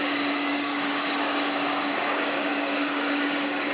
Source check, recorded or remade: remade